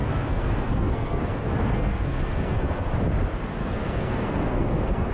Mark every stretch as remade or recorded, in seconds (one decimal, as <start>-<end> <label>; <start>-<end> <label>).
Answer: 0.0-3.0 remade; 3.0-3.6 recorded; 3.6-5.1 remade